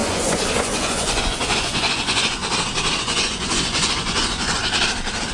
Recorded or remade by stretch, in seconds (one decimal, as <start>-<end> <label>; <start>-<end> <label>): 0.0-2.4 remade; 2.4-3.0 recorded; 3.0-4.6 remade; 4.6-5.3 recorded